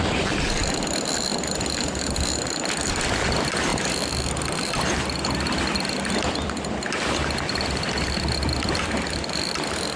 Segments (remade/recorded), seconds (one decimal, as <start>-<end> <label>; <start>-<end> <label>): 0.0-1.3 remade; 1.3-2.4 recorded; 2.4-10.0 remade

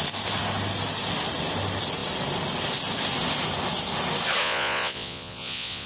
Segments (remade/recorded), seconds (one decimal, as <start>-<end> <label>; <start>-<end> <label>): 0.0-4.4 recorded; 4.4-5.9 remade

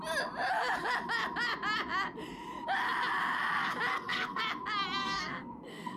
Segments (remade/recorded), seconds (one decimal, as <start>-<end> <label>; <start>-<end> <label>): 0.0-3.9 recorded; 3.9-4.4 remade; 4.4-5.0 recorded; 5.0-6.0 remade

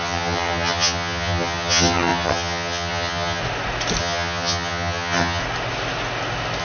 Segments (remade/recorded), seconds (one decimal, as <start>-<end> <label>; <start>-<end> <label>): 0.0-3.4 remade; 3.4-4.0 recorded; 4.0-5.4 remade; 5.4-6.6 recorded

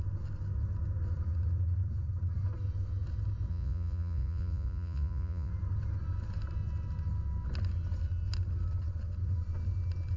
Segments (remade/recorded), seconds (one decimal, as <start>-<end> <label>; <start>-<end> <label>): 0.0-3.5 recorded; 3.5-5.5 remade; 5.5-10.2 recorded